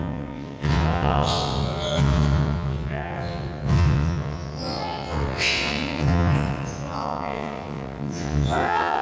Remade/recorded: remade